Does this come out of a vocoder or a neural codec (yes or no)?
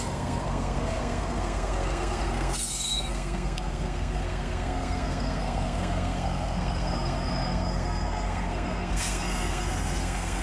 yes